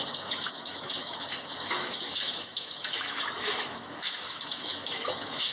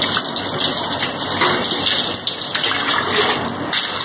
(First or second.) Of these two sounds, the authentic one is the second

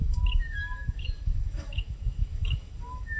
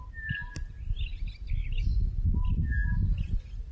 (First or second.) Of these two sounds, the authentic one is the second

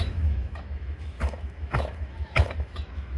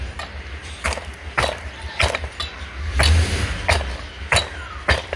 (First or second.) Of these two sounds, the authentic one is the second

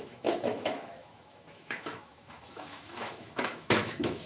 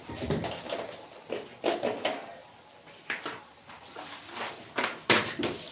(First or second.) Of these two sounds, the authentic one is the second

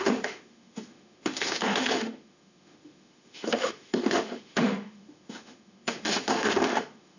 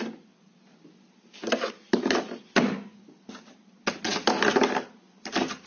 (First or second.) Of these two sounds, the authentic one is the second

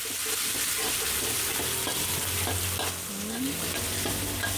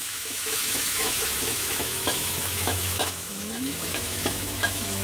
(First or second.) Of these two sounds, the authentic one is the first